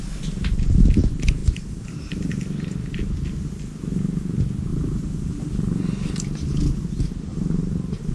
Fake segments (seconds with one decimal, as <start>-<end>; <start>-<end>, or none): 1.4-2.4; 4.7-5.3; 7.3-8.1